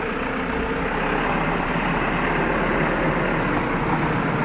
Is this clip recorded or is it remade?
recorded